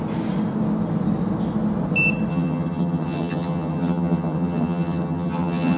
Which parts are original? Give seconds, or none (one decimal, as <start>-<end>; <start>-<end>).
0.0-2.3